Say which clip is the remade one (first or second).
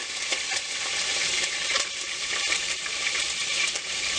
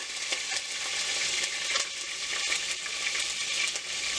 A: first